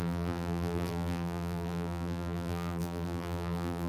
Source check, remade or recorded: remade